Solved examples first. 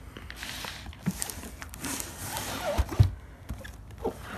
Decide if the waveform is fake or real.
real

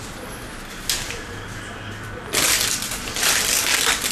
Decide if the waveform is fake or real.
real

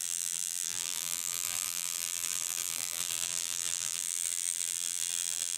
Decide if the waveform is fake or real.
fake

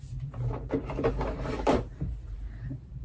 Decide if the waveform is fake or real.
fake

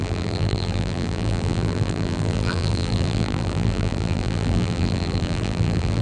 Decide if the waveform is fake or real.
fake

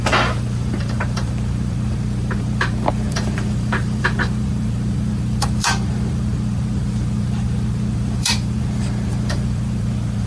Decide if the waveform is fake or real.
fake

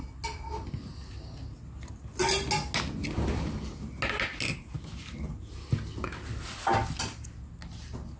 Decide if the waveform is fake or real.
real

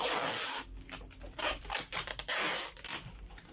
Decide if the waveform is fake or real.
real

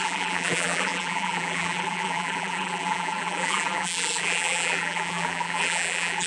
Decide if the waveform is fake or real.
fake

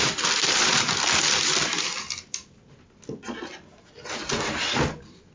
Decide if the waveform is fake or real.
real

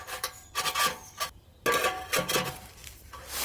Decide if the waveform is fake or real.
real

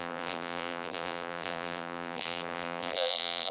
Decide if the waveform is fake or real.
fake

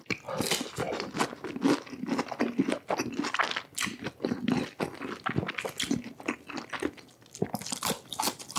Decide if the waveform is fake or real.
real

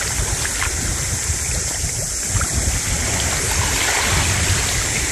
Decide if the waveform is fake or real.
real